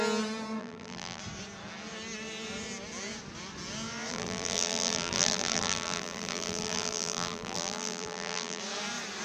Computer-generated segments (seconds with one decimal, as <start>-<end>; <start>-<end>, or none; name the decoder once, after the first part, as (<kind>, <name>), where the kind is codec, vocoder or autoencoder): 0.6-1.2 (vocoder, BigVGAN v2); 4.1-8.6